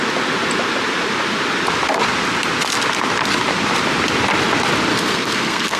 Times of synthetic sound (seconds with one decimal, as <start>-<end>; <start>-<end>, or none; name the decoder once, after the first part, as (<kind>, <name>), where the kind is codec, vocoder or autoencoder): 4.9-5.8 (codec, SNAC)